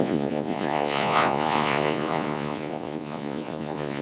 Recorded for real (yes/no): no